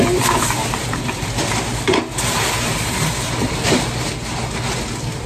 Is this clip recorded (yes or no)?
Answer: yes